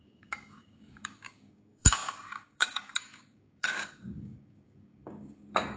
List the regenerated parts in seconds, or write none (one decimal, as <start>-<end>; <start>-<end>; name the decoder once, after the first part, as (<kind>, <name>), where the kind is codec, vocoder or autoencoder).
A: 0.0-5.8 (codec, DAC)